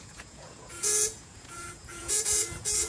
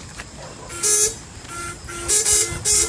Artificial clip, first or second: first